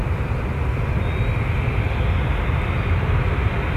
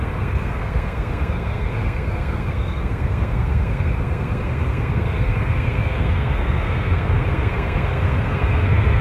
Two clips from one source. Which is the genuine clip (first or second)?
first